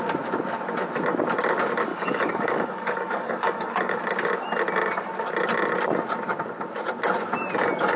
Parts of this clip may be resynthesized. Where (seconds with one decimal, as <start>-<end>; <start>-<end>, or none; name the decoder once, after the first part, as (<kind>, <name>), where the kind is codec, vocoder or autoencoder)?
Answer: 1.9-4.0 (codec, DAC)